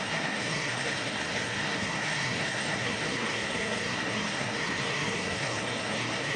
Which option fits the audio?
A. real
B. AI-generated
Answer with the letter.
B